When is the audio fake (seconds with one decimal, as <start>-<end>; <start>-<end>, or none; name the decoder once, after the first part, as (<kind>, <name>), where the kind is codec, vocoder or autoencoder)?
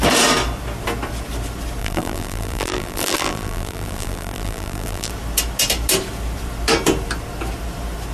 1.8-5.1 (vocoder, BigVGAN v2)